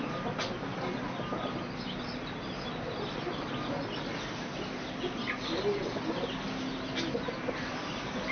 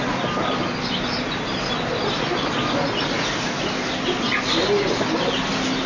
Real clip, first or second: second